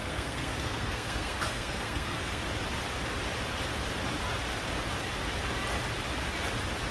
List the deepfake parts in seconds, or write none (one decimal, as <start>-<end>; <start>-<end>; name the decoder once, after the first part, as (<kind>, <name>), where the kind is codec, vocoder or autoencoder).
0.0-2.4 (codec, SNAC)